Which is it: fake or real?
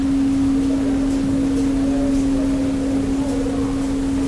real